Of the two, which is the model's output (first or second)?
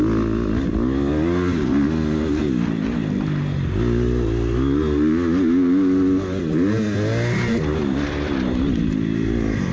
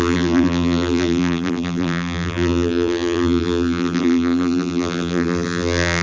second